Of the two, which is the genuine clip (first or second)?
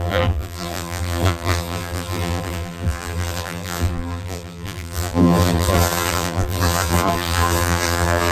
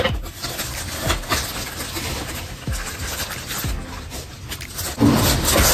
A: second